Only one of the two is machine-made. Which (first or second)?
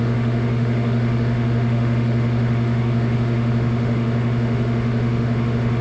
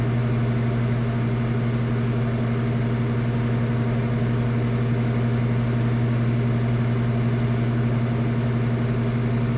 first